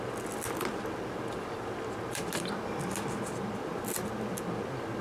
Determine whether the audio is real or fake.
real